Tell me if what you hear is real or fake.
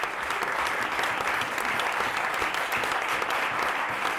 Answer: real